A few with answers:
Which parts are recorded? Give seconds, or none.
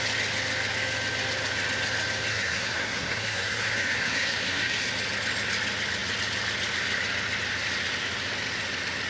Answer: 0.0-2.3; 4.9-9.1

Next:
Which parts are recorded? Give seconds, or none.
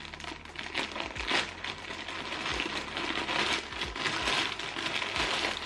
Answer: 0.0-5.7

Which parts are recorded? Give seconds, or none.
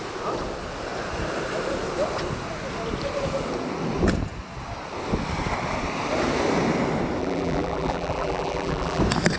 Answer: 0.0-7.2; 9.0-9.4